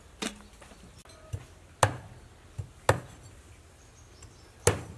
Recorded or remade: recorded